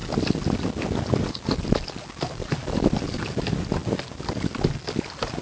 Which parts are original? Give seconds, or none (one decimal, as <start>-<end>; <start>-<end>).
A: 0.0-5.4